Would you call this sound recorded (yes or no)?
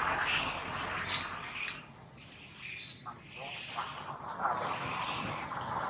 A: yes